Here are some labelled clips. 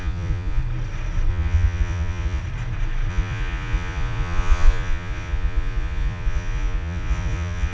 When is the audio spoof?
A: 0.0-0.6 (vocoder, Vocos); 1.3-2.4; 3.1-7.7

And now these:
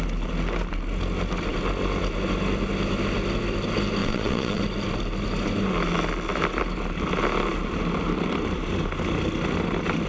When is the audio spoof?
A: 4.0-4.6 (vocoder, WaveNeXt)

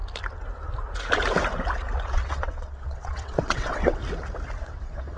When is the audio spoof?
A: 2.1-4.0 (vocoder, WaveNeXt); 4.6-5.2

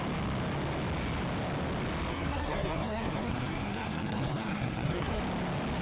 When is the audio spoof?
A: 2.1-5.2 (codec, SNAC)

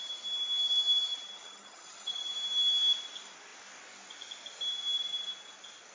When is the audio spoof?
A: 1.1-2.3 (vocoder, HiFi-GAN)

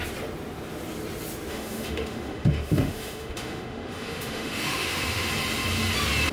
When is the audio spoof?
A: 1.5-5.3 (autoencoder, DAC-VAE)

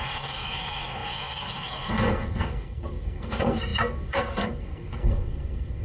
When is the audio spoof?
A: 0.0-5.8 (codec, SNAC)